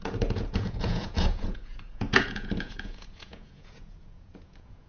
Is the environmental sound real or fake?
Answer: fake